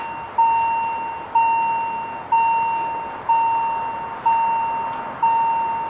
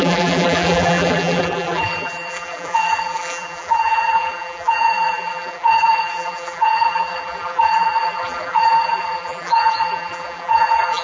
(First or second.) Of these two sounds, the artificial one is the second